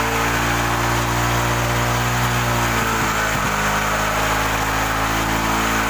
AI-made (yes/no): no